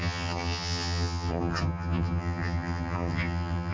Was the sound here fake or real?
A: fake